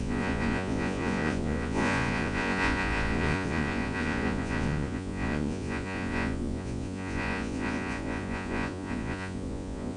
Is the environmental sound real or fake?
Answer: fake